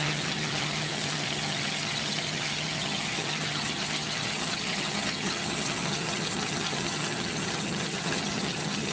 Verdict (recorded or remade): remade